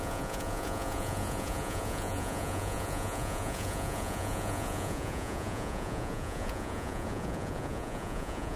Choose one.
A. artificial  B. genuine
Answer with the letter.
A